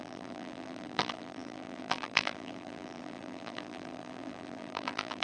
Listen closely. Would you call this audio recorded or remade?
remade